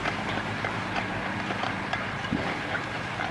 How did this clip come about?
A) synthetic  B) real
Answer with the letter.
A